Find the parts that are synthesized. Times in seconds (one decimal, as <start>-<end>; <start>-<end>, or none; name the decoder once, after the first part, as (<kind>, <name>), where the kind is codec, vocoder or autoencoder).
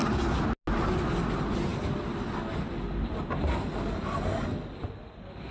none